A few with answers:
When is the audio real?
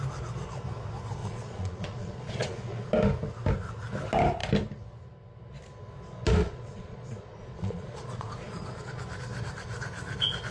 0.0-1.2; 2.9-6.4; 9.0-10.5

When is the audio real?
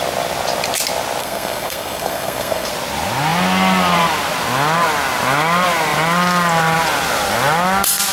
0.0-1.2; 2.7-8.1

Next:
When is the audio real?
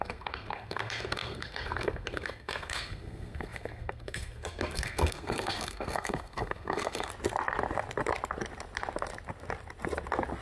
7.1-10.4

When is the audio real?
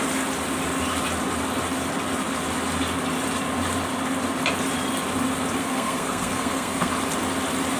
0.0-5.6; 6.9-7.8